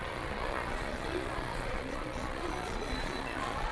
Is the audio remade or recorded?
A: remade